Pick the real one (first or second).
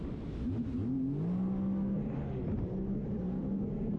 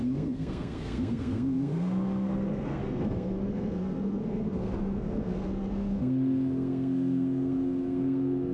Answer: first